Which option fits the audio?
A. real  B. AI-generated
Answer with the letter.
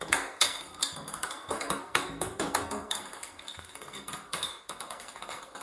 B